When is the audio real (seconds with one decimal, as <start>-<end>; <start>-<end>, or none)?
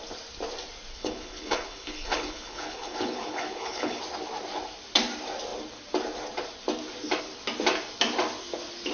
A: 0.0-0.9; 4.0-8.9